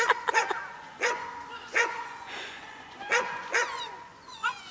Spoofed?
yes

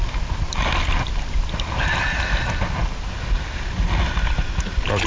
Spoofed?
no